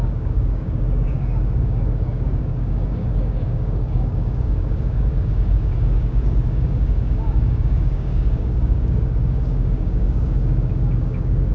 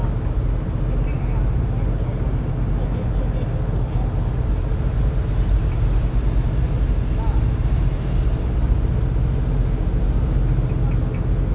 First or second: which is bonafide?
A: second